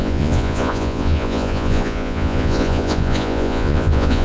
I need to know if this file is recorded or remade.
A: remade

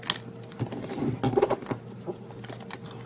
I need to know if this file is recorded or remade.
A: recorded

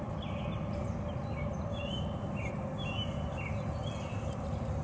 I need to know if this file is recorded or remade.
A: recorded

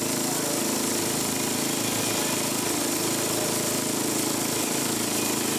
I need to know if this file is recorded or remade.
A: recorded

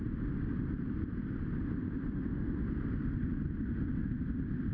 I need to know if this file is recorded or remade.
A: recorded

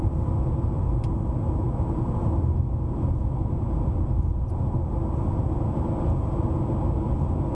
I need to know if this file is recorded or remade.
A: recorded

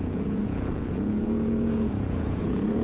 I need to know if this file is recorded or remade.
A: remade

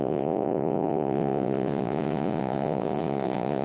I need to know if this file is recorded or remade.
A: remade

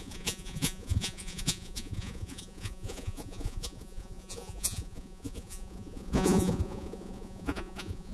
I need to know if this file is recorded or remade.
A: remade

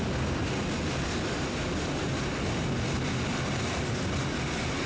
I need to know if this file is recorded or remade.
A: recorded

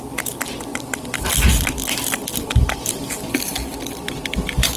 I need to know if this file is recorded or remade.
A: recorded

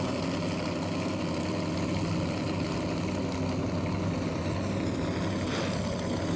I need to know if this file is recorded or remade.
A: recorded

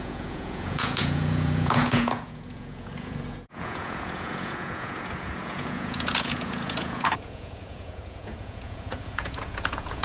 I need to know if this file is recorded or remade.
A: remade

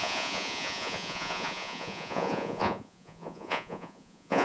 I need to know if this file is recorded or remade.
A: remade